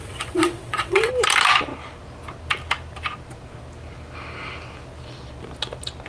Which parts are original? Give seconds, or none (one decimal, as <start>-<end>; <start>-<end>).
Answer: 1.1-6.1